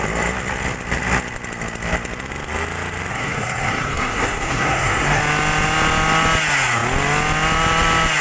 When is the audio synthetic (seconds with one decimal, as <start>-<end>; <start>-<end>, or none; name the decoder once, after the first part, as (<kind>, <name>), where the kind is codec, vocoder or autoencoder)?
3.1-5.2 (codec, SNAC)